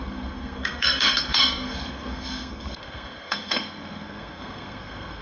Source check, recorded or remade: remade